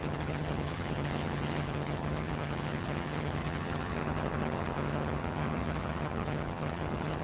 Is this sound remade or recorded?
remade